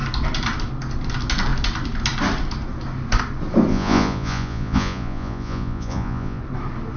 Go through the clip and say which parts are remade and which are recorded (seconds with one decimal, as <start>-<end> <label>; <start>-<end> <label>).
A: 0.0-3.7 recorded; 3.7-6.4 remade; 6.4-7.0 recorded

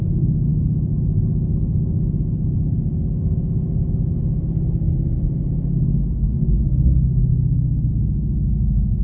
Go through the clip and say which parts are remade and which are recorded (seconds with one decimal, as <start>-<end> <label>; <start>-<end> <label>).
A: 0.0-9.0 recorded

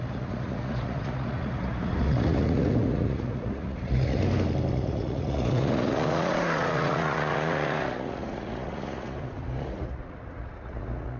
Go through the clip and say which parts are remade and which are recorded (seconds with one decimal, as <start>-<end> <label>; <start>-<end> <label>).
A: 0.0-4.2 remade; 4.2-4.7 recorded; 4.7-11.2 remade

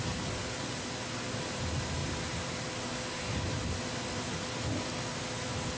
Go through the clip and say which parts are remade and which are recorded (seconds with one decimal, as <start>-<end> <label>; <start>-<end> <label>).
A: 0.0-5.8 recorded

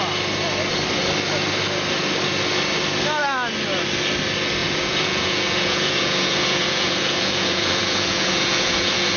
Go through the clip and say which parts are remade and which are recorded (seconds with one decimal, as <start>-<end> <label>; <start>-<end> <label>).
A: 0.0-4.6 recorded; 4.6-9.2 remade